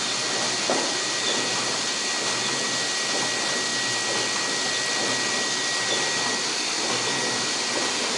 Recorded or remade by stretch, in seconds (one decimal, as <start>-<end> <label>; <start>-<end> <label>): 0.0-8.2 recorded